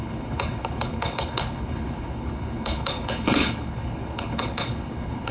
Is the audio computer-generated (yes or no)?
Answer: yes